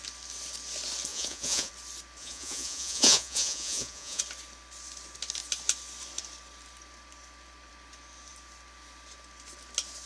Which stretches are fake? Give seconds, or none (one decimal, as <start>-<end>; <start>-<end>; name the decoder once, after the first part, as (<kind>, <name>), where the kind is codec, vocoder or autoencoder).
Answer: 1.1-1.7 (vocoder, Vocos); 2.2-4.2